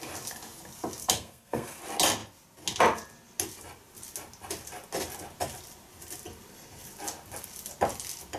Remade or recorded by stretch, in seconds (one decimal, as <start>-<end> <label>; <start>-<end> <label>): 0.0-1.0 recorded; 1.0-1.8 remade; 1.8-8.4 recorded